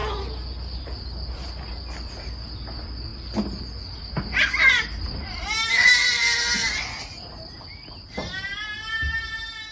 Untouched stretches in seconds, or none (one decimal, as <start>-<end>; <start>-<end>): 0.0-9.7